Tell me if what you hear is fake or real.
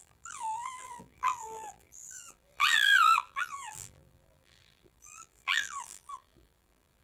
fake